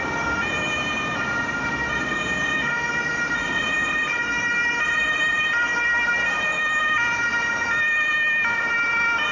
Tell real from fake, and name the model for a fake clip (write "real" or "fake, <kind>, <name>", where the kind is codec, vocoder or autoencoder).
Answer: real